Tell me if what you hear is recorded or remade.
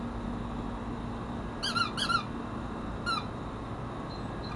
recorded